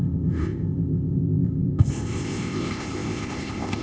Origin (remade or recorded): remade